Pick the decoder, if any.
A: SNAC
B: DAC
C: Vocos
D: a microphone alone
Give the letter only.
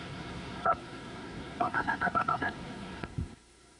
A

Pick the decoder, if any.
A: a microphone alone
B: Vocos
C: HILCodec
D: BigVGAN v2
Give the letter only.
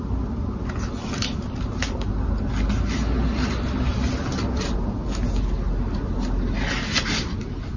A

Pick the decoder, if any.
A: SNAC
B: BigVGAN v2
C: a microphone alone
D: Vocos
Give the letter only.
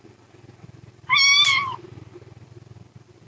B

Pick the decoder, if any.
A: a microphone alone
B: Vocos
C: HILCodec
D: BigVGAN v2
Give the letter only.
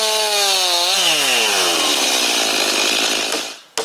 A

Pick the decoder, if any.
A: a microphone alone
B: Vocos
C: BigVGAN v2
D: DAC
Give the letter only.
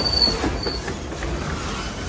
A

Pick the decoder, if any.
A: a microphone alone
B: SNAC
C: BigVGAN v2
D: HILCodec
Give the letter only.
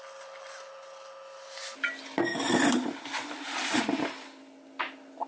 A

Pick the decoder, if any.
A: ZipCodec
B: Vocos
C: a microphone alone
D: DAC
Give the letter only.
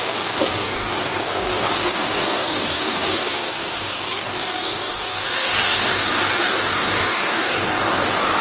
D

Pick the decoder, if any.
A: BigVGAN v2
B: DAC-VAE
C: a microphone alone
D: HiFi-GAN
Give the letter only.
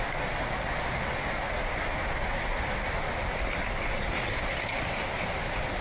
C